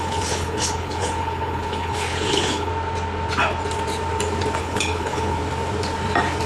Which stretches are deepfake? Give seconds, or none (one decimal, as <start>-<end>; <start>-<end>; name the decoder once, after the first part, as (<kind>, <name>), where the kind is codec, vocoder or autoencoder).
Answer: 0.0-2.7 (codec, HILCodec); 4.6-5.4